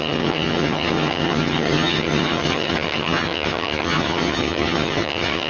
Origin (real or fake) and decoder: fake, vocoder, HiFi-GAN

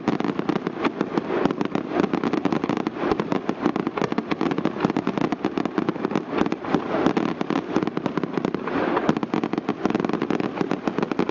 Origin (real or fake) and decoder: real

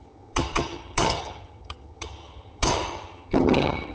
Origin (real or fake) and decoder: fake, vocoder, HiFi-GAN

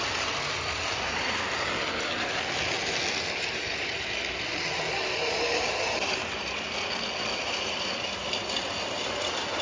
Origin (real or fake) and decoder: real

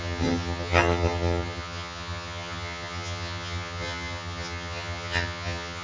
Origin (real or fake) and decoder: fake, vocoder, HiFi-GAN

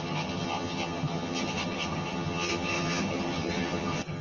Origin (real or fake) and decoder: fake, vocoder, HiFi-GAN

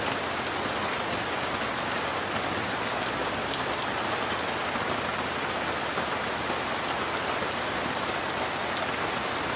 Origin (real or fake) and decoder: real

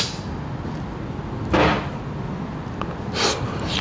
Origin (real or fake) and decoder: real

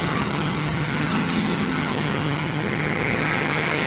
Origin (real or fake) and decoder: fake, vocoder, HiFi-GAN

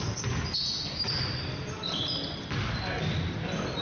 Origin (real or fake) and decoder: real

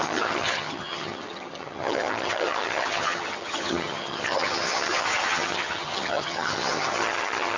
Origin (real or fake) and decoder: fake, vocoder, HiFi-GAN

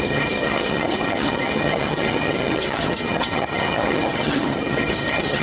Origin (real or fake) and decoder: fake, vocoder, HiFi-GAN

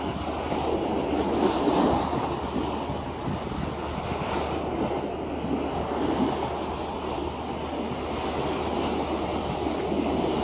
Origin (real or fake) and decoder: real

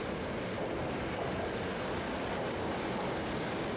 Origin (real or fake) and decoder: real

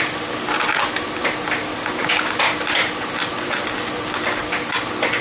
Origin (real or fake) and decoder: real